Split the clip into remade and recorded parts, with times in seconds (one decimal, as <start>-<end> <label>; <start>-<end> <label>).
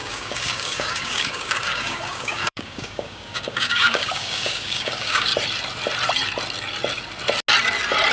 0.0-5.3 remade; 5.3-8.1 recorded